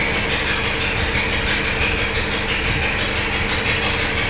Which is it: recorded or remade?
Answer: recorded